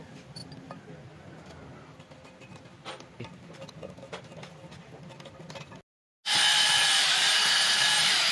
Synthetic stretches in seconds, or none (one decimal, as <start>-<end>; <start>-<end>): 6.5-8.3